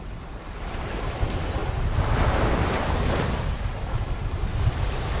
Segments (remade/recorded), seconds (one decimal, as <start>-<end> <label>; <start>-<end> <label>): 0.0-5.2 recorded